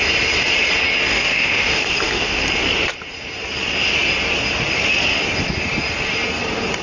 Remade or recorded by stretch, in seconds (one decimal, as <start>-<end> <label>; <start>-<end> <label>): 0.0-1.1 recorded; 1.1-2.4 remade; 2.4-6.8 recorded